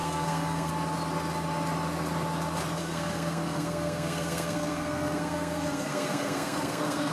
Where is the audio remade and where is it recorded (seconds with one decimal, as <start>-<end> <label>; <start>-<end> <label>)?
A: 0.0-0.7 remade; 0.7-2.8 recorded; 2.8-7.1 remade